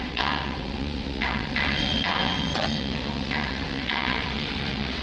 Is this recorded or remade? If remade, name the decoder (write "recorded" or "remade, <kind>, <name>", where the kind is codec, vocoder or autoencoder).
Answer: remade, vocoder, WaveNeXt